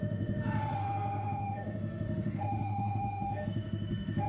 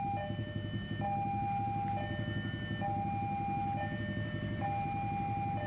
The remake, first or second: first